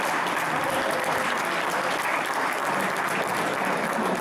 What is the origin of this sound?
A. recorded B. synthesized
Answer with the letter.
A